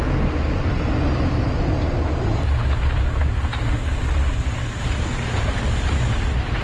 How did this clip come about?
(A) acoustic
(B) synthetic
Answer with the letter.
A